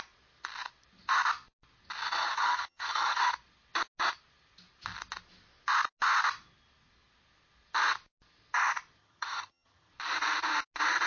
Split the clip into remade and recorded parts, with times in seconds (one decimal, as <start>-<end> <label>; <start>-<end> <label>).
0.0-2.2 recorded; 2.2-3.2 remade; 3.2-9.0 recorded; 9.0-9.9 remade; 9.9-11.1 recorded